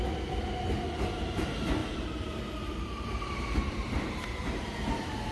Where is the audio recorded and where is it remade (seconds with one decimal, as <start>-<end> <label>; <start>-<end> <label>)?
0.0-1.8 recorded; 1.8-5.3 remade